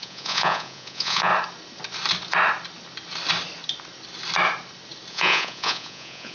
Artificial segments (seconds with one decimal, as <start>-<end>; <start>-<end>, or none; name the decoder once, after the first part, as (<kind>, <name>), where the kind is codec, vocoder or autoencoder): 0.0-1.3 (vocoder, Vocos); 5.1-6.3